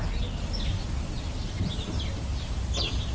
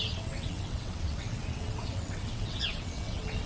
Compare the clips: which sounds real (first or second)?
first